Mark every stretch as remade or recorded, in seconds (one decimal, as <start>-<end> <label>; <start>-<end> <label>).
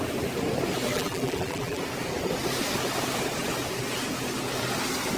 0.0-0.9 recorded; 0.9-1.8 remade; 1.8-5.2 recorded